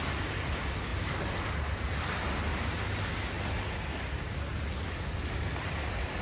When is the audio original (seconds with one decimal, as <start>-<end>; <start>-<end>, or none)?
0.0-6.2